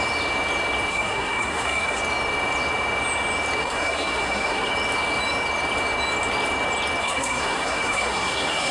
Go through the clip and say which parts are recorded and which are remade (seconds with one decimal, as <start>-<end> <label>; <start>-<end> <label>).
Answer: 0.0-0.9 recorded; 0.9-2.0 remade; 2.0-3.6 recorded; 3.6-4.7 remade; 4.7-7.0 recorded; 7.0-8.7 remade